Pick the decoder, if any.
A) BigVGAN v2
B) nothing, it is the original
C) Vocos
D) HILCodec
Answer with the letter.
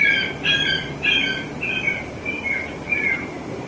A